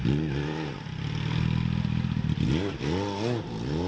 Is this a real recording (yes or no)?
yes